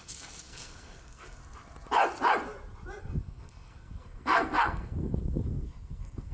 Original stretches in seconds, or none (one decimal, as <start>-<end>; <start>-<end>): 1.4-3.0